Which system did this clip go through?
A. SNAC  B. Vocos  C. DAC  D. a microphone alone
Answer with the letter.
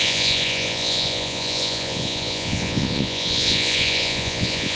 B